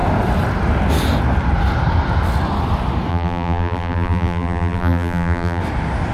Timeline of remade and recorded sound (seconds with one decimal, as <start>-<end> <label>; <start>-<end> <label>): 0.0-3.1 recorded; 3.1-5.6 remade; 5.6-6.1 recorded